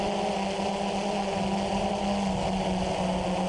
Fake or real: real